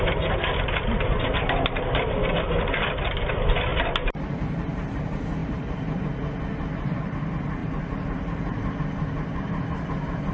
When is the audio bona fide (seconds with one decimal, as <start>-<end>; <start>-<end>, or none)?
0.0-5.4; 6.0-7.6; 8.7-10.3